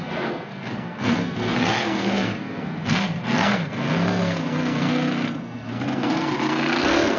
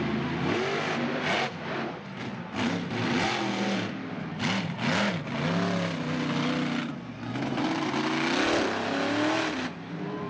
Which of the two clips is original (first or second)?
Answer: second